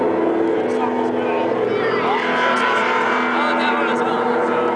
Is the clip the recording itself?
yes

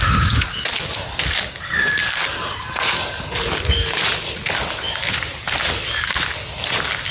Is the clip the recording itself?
yes